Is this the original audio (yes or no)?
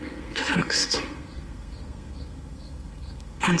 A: no